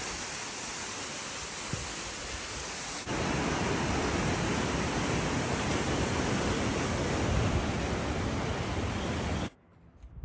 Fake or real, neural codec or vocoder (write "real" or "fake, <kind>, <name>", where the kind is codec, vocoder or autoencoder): real